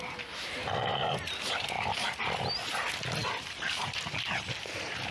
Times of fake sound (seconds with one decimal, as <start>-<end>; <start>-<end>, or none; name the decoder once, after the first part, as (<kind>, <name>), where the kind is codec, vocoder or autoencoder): none